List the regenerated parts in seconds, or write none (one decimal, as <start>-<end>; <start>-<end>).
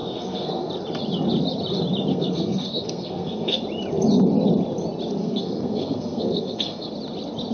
0.0-0.7; 2.1-3.6; 5.2-6.9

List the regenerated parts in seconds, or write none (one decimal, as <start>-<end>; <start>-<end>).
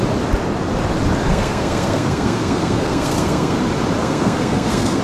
1.3-3.6; 4.0-5.0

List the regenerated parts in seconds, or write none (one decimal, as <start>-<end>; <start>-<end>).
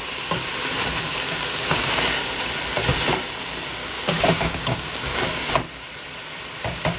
1.1-2.0; 3.8-5.5